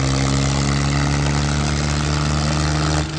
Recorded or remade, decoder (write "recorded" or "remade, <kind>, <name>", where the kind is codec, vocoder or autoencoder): recorded